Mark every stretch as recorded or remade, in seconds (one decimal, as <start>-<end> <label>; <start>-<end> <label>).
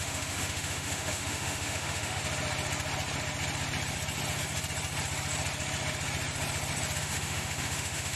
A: 0.0-2.2 remade; 2.2-7.0 recorded; 7.0-8.2 remade